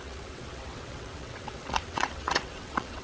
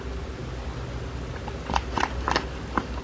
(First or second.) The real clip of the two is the second